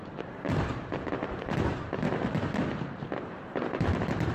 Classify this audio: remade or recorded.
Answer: remade